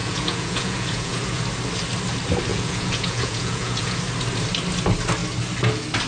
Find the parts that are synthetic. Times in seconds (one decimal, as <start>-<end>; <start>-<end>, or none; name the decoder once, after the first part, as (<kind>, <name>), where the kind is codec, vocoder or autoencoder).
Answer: 0.0-1.4 (vocoder, Vocos); 2.5-4.0